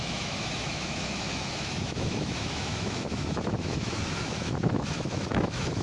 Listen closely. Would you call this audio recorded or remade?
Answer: remade